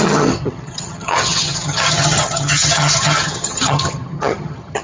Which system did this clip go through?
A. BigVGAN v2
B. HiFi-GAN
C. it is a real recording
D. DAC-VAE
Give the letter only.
B